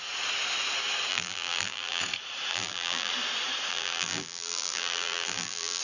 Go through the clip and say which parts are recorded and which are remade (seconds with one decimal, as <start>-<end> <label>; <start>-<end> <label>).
0.0-1.1 recorded; 1.1-2.0 remade; 2.0-2.5 recorded; 2.5-3.1 remade; 3.1-3.7 recorded; 3.7-5.8 remade